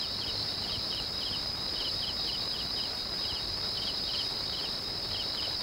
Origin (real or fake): fake